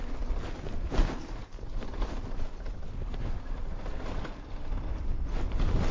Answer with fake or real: real